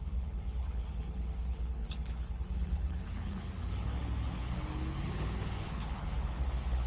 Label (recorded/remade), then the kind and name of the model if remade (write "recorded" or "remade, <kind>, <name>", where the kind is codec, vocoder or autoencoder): remade, codec, HILCodec